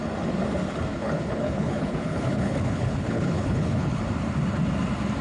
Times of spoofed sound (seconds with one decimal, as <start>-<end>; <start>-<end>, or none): 0.9-4.0